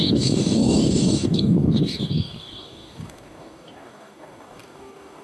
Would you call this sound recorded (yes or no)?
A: no